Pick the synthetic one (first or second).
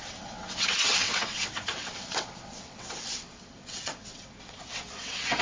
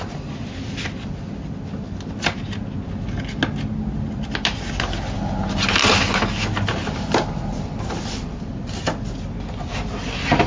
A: first